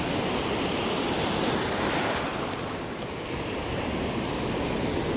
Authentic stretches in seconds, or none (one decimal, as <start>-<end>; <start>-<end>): 0.0-5.2

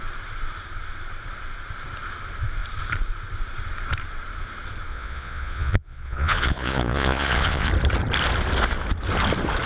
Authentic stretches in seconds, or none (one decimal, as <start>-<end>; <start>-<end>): 0.0-4.9; 7.7-9.7

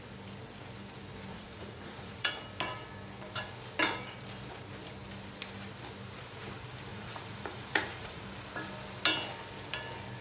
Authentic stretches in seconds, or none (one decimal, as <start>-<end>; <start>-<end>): 0.0-1.3; 2.3-6.9; 8.2-10.2

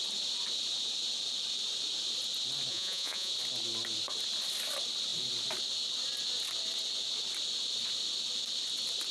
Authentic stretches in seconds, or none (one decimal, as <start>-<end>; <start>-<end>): 0.0-2.7; 3.3-9.1

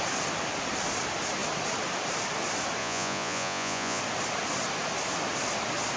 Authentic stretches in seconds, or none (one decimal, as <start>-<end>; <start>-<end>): 0.0-2.8; 4.0-6.0

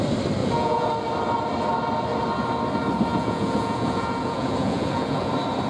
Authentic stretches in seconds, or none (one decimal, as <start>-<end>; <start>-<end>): 0.0-0.4; 0.9-3.1; 5.3-5.7

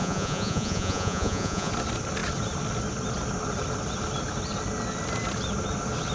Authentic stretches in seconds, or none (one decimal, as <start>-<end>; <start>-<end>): 1.7-6.1